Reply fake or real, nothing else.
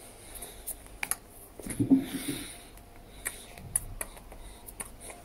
real